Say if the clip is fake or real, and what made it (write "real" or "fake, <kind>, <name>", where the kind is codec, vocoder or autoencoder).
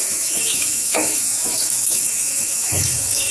fake, autoencoder, DAC-VAE